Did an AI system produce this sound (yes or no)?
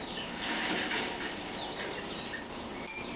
no